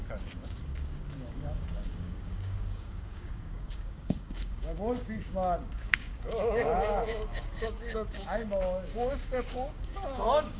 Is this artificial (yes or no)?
yes